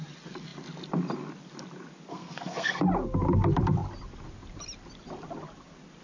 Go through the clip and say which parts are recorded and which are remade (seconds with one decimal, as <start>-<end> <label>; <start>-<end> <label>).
0.0-2.1 recorded; 2.1-2.8 remade; 2.8-6.0 recorded